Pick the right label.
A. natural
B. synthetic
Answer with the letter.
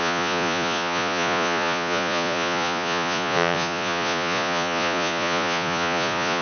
B